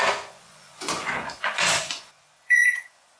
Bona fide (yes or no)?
no